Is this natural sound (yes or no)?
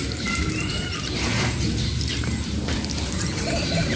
no